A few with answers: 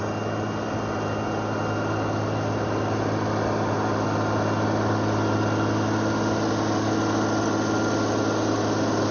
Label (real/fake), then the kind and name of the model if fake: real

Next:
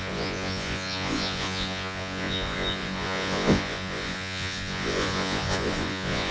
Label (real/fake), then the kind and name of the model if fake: fake, vocoder, Vocos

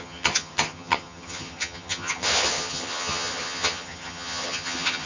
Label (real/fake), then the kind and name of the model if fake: fake, vocoder, HiFi-GAN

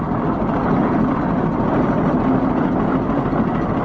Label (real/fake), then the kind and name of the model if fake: real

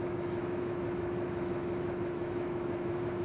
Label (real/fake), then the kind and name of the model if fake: fake, autoencoder, DAC-VAE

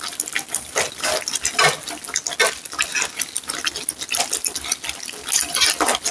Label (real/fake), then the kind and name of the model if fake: real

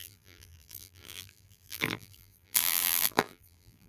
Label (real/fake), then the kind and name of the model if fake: fake, vocoder, BigVGAN v2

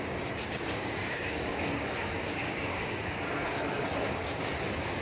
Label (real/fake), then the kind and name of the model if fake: fake, codec, DAC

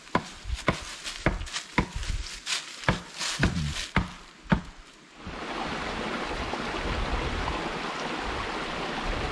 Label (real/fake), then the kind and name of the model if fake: real